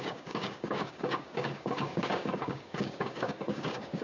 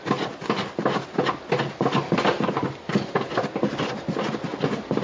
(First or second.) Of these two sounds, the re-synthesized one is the first